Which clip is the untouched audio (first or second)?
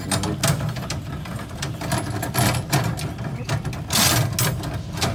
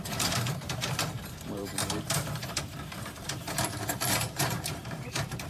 first